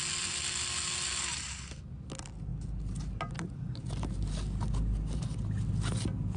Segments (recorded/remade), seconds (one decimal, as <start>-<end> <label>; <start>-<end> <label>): 0.0-1.3 recorded; 1.3-1.8 remade; 1.8-6.4 recorded